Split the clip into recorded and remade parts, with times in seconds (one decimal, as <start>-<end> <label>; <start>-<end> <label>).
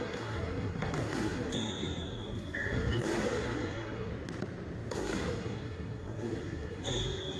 0.0-4.1 remade; 4.1-4.9 recorded; 4.9-7.4 remade